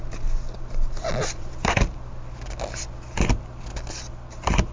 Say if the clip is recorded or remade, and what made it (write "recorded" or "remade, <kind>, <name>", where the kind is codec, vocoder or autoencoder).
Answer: recorded